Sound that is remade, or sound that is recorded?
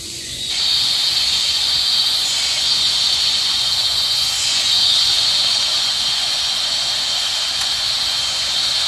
remade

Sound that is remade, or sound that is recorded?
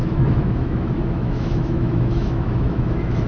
remade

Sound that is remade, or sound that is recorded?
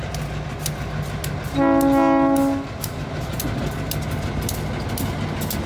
recorded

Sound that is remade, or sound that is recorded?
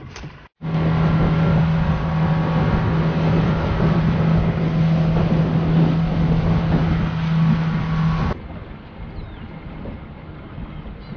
recorded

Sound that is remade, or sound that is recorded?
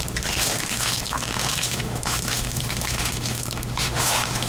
remade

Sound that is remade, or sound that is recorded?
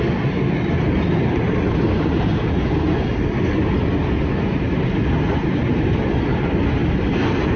recorded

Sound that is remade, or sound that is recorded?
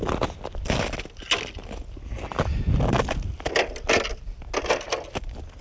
recorded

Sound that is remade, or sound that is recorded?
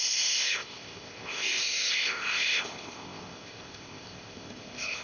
remade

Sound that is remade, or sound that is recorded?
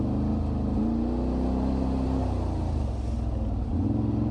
recorded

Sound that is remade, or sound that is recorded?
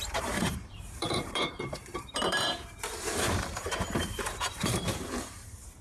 remade